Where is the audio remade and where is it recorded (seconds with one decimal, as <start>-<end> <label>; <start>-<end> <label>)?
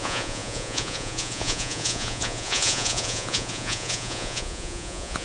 0.0-5.2 remade